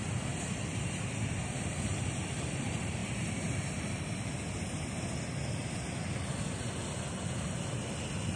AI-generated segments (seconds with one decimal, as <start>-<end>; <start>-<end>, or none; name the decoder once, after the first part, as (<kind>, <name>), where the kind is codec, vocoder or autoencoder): none